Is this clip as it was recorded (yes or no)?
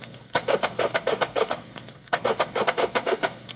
no